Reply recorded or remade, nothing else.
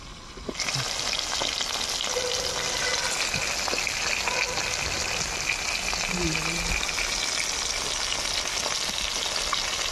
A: recorded